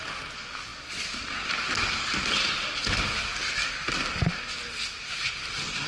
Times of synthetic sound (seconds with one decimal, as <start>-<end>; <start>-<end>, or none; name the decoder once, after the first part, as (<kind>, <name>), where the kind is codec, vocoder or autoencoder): none